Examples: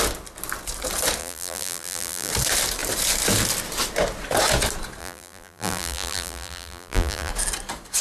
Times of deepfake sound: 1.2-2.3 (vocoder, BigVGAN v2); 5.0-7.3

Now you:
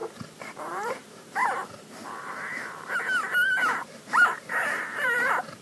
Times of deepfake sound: 0.6-5.6 (vocoder, BigVGAN v2)

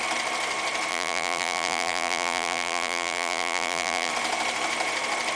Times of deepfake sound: 0.9-4.1 (vocoder, BigVGAN v2)

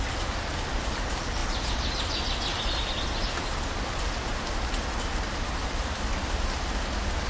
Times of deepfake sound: none